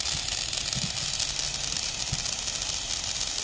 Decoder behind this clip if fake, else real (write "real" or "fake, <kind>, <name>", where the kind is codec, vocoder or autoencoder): real